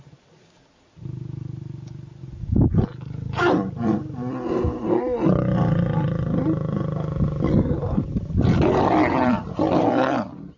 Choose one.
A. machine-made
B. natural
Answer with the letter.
B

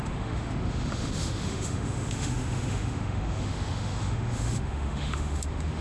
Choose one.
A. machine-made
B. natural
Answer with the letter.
A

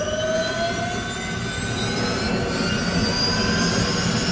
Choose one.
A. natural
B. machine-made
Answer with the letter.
A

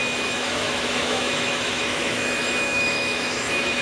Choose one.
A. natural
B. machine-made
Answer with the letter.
B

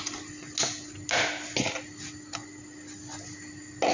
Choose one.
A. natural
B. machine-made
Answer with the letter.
A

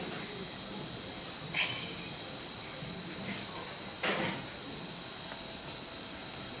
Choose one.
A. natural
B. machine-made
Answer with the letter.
A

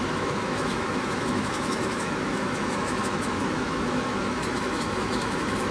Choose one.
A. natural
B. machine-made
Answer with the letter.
B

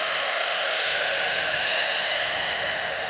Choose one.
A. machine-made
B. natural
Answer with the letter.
A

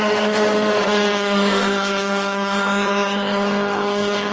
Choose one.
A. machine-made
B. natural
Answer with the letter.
A